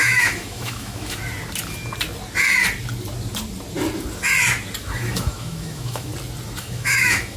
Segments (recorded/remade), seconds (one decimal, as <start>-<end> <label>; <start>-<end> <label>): 0.0-1.2 remade; 1.2-4.8 recorded; 4.8-6.1 remade; 6.1-6.6 recorded; 6.6-7.4 remade